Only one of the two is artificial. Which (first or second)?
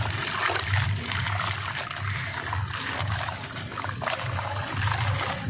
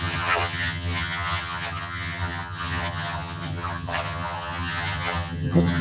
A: second